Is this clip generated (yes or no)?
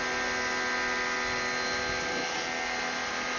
no